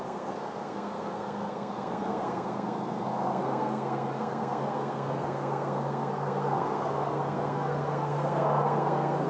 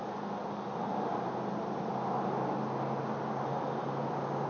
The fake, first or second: first